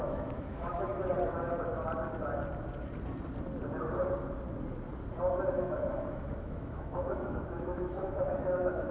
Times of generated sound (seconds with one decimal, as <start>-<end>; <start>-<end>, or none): 0.0-0.9; 5.5-8.9